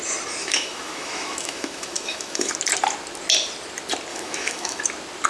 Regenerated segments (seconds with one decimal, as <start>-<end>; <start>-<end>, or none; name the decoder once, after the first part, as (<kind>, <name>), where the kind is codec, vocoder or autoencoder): 0.4-2.5 (autoencoder, DAC-VAE); 4.1-4.8